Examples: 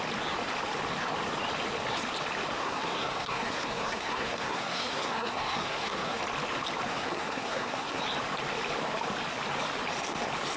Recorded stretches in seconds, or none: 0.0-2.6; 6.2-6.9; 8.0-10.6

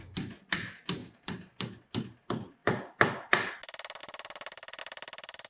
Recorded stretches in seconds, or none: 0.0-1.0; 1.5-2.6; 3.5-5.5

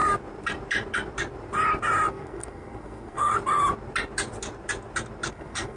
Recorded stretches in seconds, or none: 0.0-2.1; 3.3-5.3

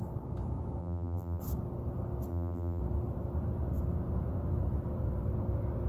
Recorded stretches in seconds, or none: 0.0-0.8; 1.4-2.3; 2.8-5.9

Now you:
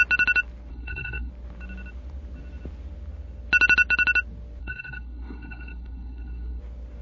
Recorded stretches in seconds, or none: 0.0-0.7; 1.3-4.6; 6.6-7.0

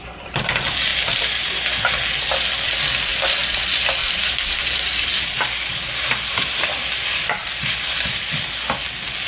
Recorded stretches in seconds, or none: 0.0-4.0; 8.5-9.3

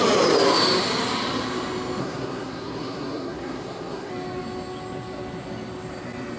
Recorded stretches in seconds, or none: 0.0-2.0; 4.1-6.4

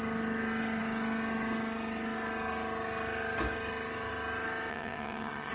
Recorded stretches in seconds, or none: 0.0-4.7